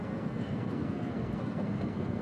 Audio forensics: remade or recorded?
remade